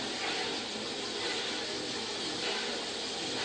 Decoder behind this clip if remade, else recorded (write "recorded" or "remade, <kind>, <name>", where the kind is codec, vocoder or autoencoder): recorded